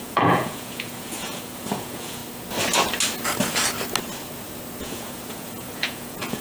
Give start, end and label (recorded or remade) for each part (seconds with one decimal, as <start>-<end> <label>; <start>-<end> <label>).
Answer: 0.0-2.2 remade; 2.2-4.8 recorded; 4.8-6.4 remade